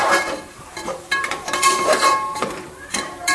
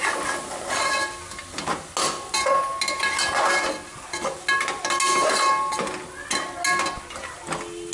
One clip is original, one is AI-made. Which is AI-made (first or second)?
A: first